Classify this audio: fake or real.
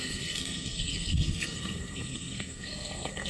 fake